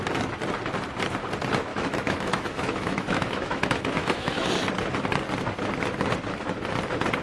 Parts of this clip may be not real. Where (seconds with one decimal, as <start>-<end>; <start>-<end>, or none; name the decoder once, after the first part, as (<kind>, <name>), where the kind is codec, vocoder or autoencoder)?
1.7-4.5 (autoencoder, DAC-VAE)